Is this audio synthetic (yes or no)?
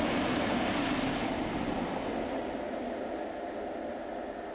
no